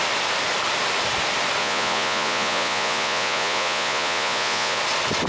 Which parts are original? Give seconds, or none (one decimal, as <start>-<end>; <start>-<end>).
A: 0.0-1.6; 4.8-5.3